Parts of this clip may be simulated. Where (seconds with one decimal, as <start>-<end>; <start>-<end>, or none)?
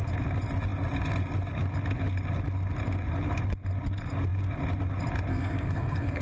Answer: 5.3-6.2